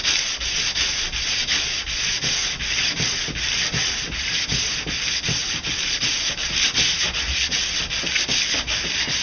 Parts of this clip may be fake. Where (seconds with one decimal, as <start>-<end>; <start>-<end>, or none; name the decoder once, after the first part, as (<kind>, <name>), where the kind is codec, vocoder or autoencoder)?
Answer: 5.4-6.3 (vocoder, BigVGAN v2)